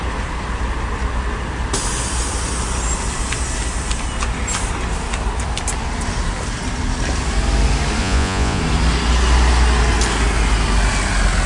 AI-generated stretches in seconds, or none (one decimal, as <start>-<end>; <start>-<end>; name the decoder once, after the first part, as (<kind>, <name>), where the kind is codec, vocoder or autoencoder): 8.0-8.6 (vocoder, Vocos)